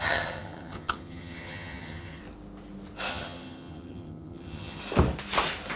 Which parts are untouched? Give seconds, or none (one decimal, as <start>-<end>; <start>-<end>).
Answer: 2.2-3.1; 4.8-5.8